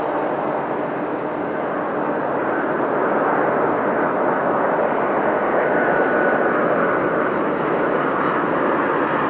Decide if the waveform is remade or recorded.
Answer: recorded